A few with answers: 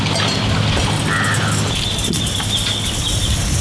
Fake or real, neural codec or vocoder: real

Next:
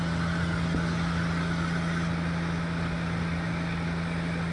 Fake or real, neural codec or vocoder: real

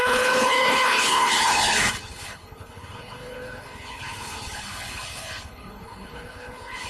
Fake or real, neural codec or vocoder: fake, codec, HILCodec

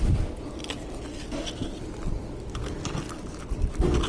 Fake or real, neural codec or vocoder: real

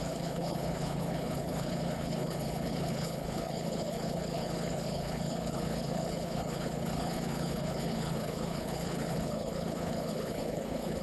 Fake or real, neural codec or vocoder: fake, codec, HILCodec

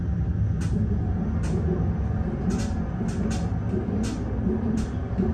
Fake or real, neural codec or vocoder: real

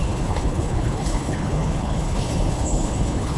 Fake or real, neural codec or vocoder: fake, codec, HILCodec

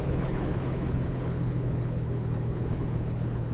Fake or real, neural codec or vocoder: fake, codec, HILCodec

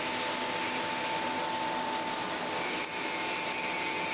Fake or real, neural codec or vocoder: real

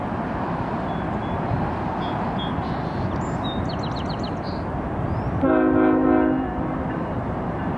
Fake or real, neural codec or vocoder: real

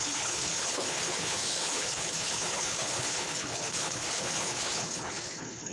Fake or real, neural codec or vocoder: fake, codec, HILCodec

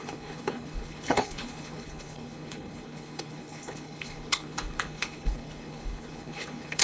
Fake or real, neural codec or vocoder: fake, codec, HILCodec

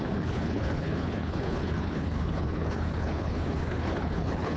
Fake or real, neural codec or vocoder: fake, codec, HILCodec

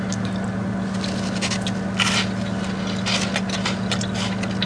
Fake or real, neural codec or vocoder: real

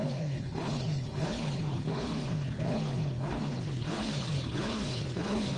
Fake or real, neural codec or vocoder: fake, codec, HILCodec